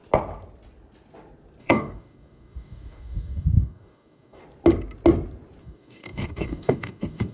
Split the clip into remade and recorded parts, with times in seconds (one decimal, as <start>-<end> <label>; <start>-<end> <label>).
0.0-1.6 recorded; 1.6-4.4 remade; 4.4-5.6 recorded; 5.6-7.3 remade